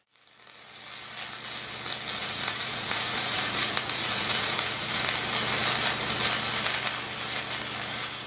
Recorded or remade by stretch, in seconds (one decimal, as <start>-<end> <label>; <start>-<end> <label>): 0.0-2.2 recorded; 2.2-5.0 remade; 5.0-8.3 recorded